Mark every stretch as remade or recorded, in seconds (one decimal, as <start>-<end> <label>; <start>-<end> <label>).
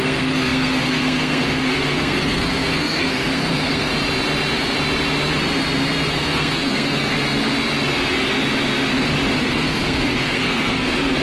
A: 0.0-3.9 remade; 3.9-6.1 recorded; 6.1-7.1 remade; 7.1-9.4 recorded; 9.4-11.2 remade